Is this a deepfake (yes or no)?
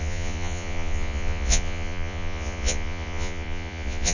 yes